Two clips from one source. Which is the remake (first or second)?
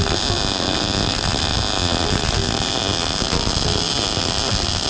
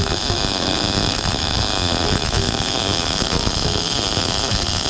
second